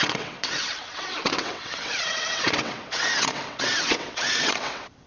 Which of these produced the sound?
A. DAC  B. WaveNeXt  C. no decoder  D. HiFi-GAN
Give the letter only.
B